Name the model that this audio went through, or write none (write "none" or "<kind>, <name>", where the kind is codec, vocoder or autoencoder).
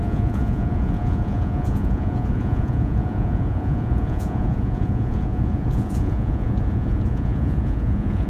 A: vocoder, Vocos